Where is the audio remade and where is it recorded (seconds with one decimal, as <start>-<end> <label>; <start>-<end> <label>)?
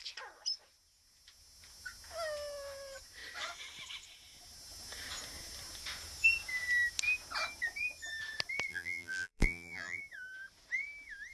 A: 0.0-8.7 recorded; 8.7-10.0 remade; 10.0-11.3 recorded